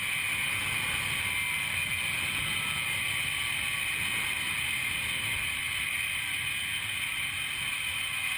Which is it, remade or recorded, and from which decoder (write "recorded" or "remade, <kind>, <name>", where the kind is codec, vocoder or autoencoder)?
recorded